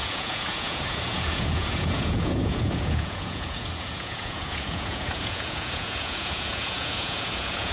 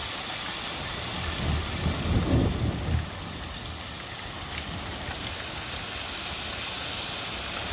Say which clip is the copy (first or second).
first